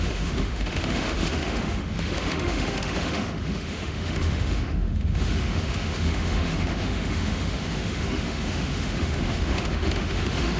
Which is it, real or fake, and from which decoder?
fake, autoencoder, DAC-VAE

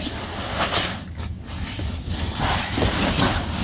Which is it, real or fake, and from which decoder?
real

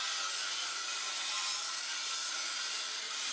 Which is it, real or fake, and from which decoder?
fake, vocoder, BigVGAN v2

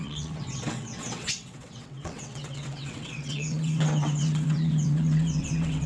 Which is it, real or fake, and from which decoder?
fake, vocoder, WaveNeXt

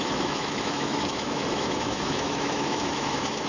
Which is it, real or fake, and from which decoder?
fake, autoencoder, DAC-VAE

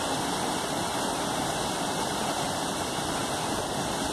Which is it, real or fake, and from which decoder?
real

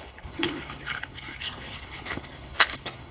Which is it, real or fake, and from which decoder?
fake, codec, HILCodec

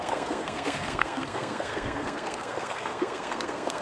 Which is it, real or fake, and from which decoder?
fake, codec, SNAC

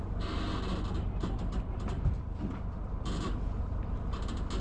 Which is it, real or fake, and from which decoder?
real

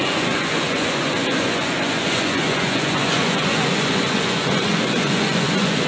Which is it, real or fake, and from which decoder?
fake, vocoder, Vocos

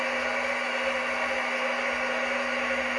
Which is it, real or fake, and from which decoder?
real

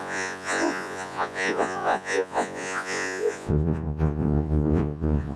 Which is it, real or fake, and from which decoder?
fake, vocoder, Vocos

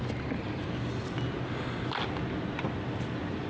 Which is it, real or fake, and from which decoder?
real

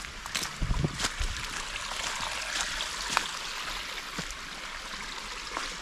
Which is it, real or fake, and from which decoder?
real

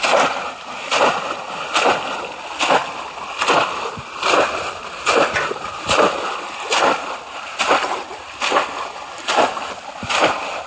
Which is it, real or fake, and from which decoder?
real